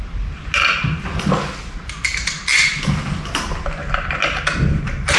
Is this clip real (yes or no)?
yes